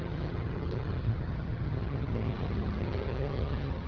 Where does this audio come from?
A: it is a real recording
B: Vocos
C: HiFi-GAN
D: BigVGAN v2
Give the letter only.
C